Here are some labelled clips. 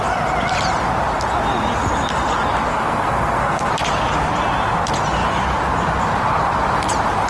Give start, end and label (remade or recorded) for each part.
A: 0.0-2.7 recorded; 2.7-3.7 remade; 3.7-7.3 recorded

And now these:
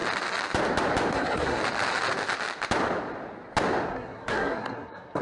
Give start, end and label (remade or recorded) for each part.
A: 0.0-1.1 recorded; 1.1-1.6 remade; 1.6-3.9 recorded; 3.9-5.2 remade

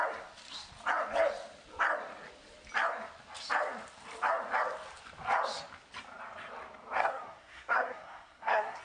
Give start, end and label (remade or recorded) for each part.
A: 0.0-7.0 recorded; 7.0-8.8 remade

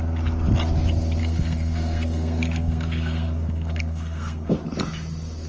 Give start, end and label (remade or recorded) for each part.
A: 0.0-1.2 recorded; 1.2-4.5 remade; 4.5-5.5 recorded

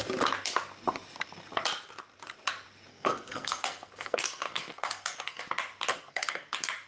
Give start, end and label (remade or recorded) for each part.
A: 0.0-2.9 recorded; 2.9-5.4 remade; 5.4-5.9 recorded; 5.9-6.5 remade; 6.5-6.9 recorded

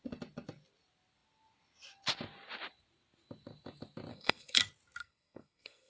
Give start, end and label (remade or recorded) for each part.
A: 0.0-4.1 recorded; 4.1-4.6 remade; 4.6-5.0 recorded; 5.0-5.9 remade

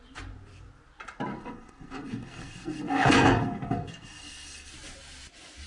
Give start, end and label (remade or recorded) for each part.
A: 0.0-1.3 recorded; 1.3-4.7 remade; 4.7-5.7 recorded